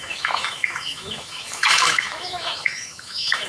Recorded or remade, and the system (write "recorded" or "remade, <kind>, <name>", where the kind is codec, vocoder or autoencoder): remade, autoencoder, DAC-VAE